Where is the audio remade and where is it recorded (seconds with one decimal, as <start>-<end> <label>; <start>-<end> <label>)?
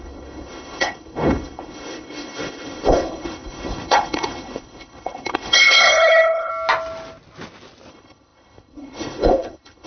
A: 0.0-6.5 remade; 6.5-7.9 recorded; 7.9-9.9 remade